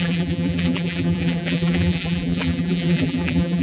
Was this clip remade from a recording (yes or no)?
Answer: yes